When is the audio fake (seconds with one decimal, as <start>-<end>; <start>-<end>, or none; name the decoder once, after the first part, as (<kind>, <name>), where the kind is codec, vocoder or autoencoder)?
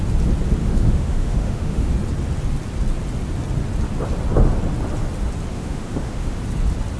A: 0.6-1.9 (autoencoder, DAC-VAE); 5.5-6.4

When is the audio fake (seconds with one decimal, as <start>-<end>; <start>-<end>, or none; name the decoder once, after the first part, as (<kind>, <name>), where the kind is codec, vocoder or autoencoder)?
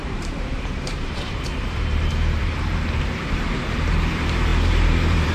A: 0.0-5.3 (vocoder, BigVGAN v2)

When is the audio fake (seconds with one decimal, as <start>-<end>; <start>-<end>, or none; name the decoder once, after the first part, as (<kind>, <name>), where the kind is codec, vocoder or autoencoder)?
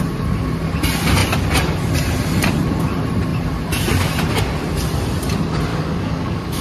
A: 5.7-6.6 (codec, DAC)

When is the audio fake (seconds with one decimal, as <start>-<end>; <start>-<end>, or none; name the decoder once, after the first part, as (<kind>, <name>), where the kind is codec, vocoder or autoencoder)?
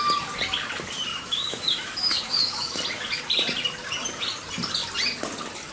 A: 1.1-2.8 (autoencoder, DAC-VAE)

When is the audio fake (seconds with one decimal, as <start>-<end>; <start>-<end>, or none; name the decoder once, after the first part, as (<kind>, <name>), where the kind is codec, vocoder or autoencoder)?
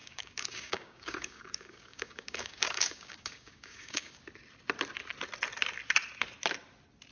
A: 0.0-4.2 (codec, DAC)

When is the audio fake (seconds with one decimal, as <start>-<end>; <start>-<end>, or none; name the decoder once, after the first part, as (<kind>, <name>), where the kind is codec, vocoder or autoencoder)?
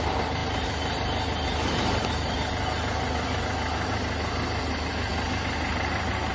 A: none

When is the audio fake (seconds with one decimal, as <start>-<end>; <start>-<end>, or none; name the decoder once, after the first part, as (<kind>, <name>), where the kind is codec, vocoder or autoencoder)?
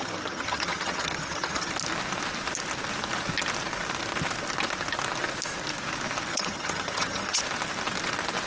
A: 0.0-1.7 (vocoder, HiFi-GAN); 6.3-7.4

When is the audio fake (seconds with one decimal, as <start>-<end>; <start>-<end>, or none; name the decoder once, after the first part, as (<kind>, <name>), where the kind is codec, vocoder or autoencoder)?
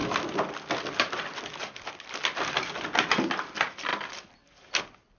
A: none